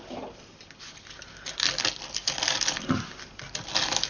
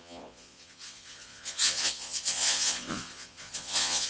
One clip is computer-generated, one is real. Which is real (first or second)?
first